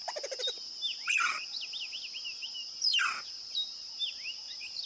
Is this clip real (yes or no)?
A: yes